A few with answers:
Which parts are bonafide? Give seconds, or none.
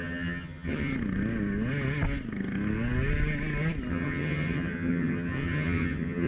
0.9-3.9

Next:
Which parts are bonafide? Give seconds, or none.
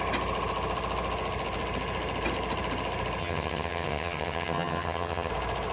0.0-3.2; 5.3-5.7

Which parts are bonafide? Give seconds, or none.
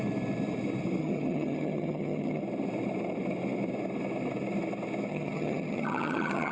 0.0-1.0; 2.4-5.1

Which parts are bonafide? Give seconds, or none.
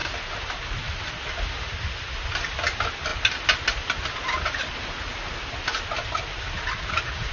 0.0-7.3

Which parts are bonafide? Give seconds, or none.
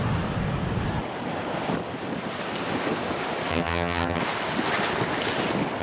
0.0-3.5; 4.2-5.8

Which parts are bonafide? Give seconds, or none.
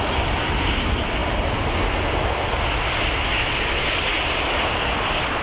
0.0-5.4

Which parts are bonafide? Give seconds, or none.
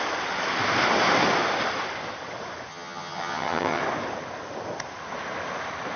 0.0-2.7; 3.8-6.0